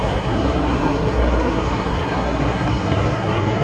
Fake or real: fake